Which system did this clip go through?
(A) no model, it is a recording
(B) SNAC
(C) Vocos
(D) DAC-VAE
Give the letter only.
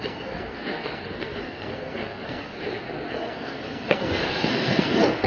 B